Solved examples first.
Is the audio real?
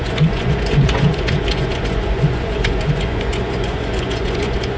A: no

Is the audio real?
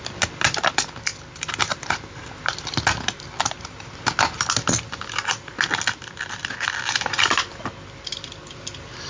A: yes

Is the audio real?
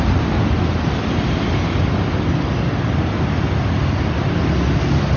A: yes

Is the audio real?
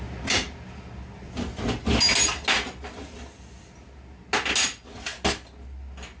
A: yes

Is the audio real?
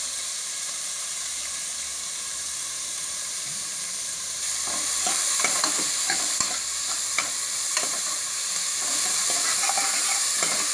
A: no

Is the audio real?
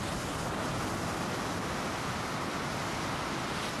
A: yes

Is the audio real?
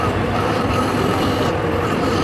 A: no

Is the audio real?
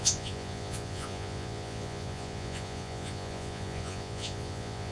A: no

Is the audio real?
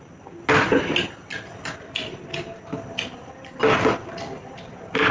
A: yes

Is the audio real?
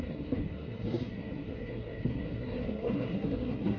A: no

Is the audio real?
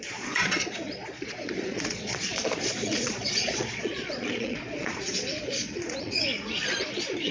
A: no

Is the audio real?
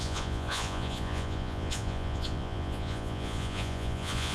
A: no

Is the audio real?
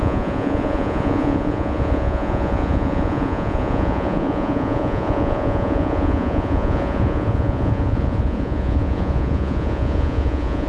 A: no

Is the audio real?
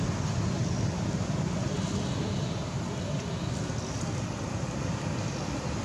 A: yes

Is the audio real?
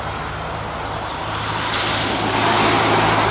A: yes